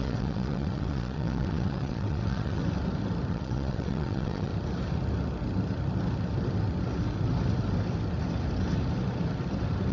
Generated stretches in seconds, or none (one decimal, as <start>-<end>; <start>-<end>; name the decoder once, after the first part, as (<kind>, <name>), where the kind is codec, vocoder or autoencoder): 0.0-2.6 (vocoder, WaveNeXt); 3.3-4.5